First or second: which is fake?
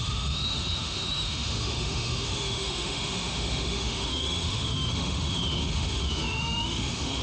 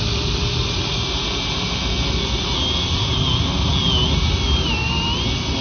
first